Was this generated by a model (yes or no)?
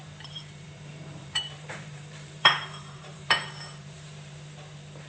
yes